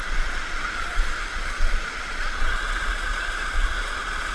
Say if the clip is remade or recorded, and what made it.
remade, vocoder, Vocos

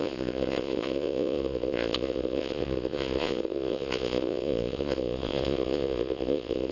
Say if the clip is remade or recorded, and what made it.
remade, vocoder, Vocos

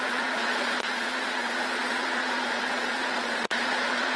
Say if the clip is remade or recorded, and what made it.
remade, vocoder, Vocos